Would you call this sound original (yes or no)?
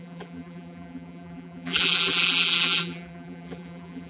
no